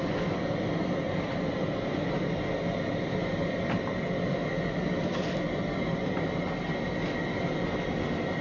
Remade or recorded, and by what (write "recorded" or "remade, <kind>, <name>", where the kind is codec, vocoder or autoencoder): recorded